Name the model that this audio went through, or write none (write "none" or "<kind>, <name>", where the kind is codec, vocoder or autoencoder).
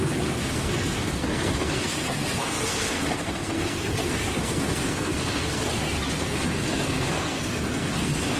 codec, SNAC